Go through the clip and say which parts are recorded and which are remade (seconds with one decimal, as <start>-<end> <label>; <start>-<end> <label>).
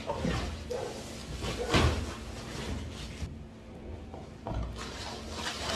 0.0-5.8 recorded